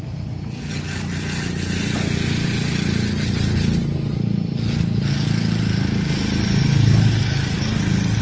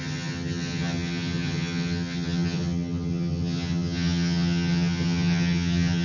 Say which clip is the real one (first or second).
first